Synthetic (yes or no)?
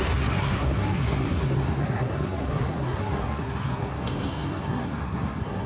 yes